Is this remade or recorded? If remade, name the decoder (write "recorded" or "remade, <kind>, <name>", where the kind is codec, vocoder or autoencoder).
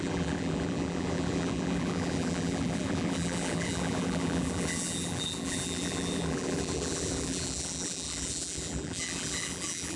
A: remade, vocoder, BigVGAN v2